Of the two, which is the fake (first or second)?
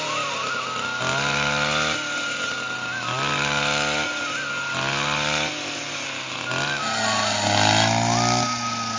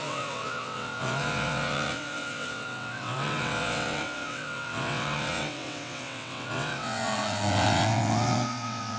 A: second